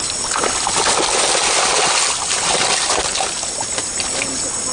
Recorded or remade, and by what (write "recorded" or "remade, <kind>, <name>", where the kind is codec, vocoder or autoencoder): recorded